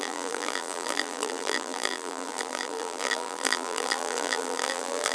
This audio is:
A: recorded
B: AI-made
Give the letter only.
B